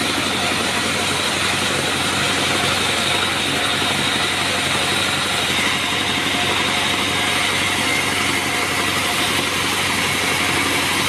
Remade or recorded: recorded